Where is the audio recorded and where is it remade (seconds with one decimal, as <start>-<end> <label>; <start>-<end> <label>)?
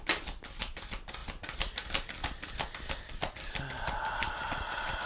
0.0-5.1 recorded